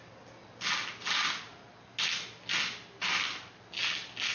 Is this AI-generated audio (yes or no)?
no